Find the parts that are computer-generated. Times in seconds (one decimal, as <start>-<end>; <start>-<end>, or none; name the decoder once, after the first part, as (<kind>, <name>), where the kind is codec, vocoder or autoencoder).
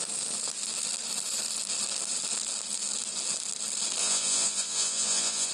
4.0-5.5 (vocoder, Vocos)